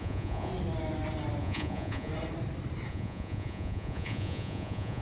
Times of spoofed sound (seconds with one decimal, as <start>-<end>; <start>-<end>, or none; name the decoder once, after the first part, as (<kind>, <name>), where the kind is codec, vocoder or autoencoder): 0.0-0.5 (vocoder, Vocos); 1.4-2.1; 2.9-5.0